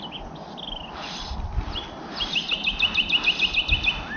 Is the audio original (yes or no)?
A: yes